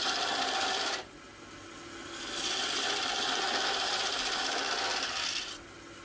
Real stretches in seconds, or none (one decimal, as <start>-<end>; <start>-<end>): 0.0-6.0